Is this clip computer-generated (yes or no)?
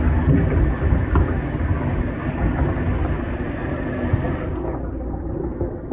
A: no